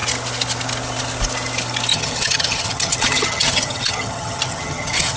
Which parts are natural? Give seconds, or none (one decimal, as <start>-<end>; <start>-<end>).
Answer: 0.0-1.9